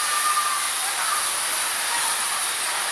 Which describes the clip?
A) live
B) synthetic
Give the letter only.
A